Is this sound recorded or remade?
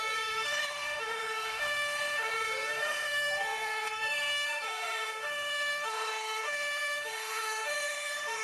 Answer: remade